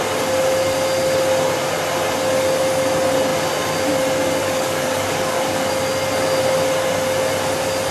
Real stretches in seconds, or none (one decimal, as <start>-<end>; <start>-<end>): 0.0-4.4; 5.7-7.9